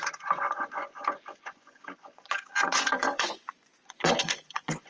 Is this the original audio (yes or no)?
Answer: no